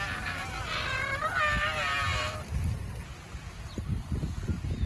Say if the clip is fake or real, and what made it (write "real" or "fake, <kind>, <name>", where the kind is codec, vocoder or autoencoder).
real